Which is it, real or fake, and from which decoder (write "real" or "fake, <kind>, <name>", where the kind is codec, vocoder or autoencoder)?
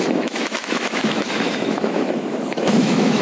fake, autoencoder, DAC-VAE